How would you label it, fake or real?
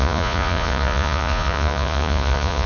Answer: fake